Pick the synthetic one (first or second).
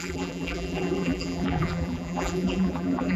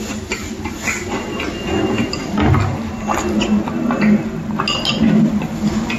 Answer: first